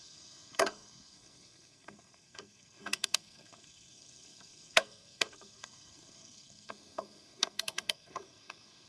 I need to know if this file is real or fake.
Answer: fake